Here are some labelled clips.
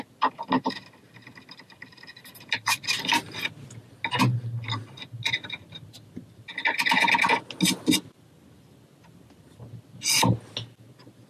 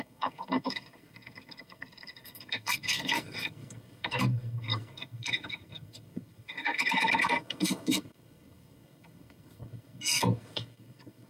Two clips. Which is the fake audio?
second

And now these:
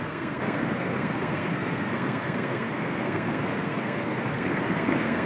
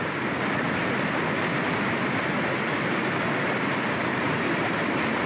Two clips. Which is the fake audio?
first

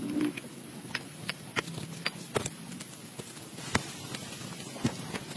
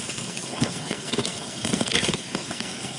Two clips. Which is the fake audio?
second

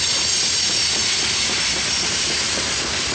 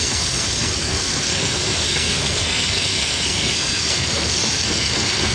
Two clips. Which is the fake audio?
second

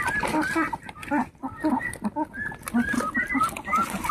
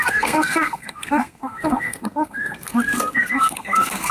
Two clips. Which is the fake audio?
second